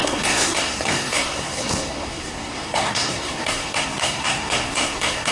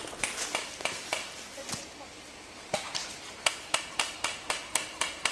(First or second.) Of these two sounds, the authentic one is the second